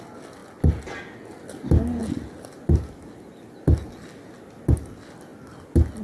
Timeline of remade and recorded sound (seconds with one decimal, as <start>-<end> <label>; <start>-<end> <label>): 0.0-6.0 recorded